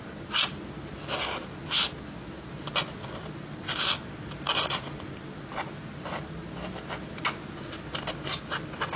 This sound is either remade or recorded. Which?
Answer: recorded